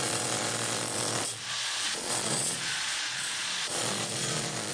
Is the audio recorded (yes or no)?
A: no